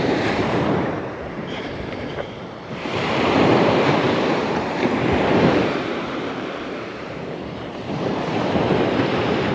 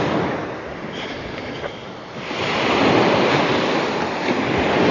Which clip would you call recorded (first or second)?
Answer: second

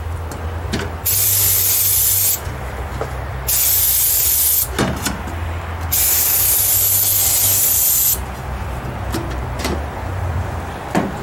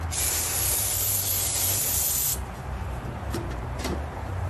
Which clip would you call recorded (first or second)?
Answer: first